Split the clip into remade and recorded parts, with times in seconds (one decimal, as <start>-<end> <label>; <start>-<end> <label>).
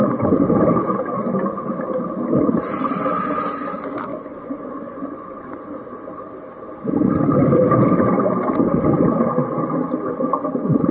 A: 0.0-4.1 recorded; 4.1-5.5 remade; 5.5-10.9 recorded